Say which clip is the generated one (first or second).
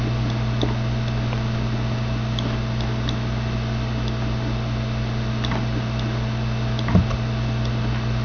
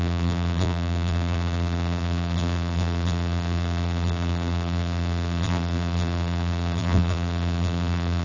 second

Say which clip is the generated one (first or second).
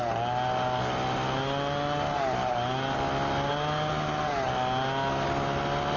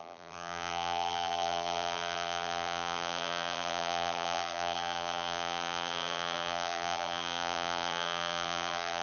second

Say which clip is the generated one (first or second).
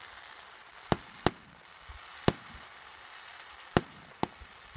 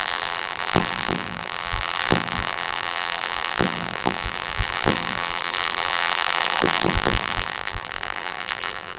second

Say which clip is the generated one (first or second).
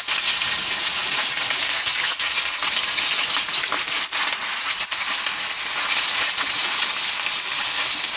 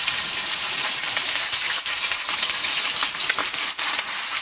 second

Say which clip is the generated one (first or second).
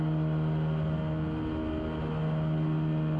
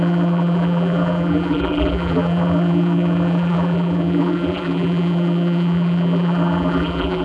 second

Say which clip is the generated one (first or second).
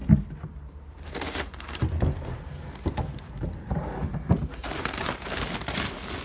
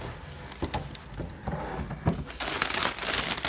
first